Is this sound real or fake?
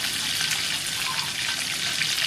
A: real